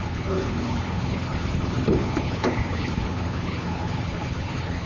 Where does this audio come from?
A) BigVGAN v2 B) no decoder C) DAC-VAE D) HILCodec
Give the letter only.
D